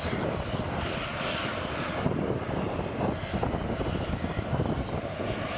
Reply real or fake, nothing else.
real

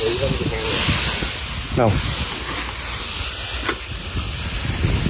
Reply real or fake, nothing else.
real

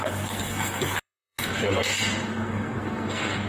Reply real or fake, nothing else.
fake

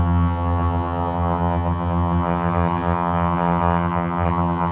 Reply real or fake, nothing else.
fake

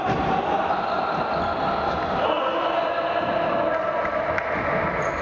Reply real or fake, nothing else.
real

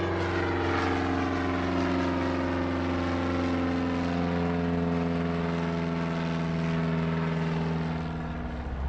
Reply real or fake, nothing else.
real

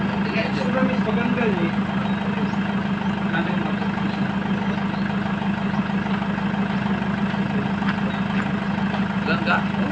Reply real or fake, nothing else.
real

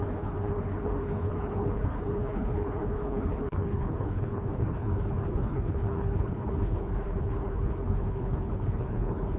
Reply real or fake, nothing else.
fake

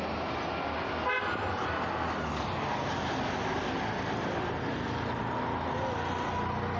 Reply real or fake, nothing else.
real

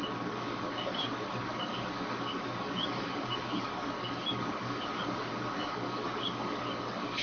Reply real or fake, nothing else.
fake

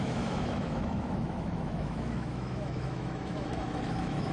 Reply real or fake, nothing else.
fake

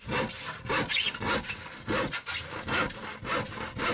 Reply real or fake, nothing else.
real